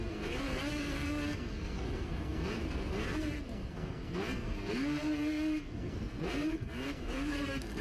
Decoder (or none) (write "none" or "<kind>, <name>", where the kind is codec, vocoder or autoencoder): codec, SNAC